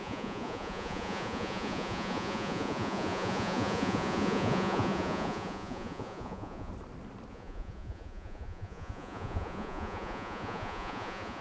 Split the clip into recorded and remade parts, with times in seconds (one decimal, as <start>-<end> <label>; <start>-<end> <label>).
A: 0.0-6.7 remade; 6.7-7.3 recorded; 7.3-11.4 remade